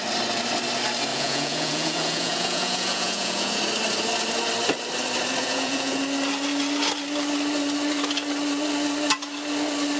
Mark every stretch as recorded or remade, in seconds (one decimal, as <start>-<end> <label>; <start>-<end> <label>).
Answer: 0.0-1.1 recorded; 1.1-3.6 remade; 3.6-5.4 recorded; 5.4-6.0 remade; 6.0-10.0 recorded